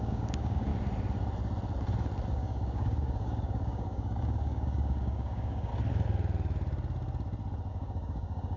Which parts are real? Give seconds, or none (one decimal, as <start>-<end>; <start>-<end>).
0.7-2.3; 5.7-7.7